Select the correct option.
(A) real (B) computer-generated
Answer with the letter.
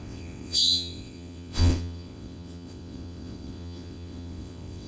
B